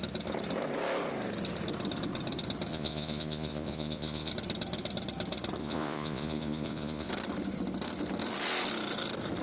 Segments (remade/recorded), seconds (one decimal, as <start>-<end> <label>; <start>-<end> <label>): 0.0-2.7 recorded; 2.7-4.3 remade; 4.3-5.6 recorded; 5.6-7.1 remade; 7.1-9.4 recorded